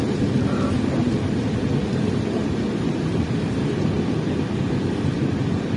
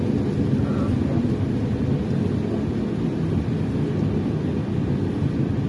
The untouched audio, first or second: second